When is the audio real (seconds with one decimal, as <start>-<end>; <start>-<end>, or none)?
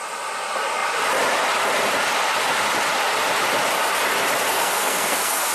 0.0-4.5